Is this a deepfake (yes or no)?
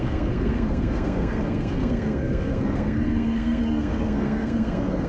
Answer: yes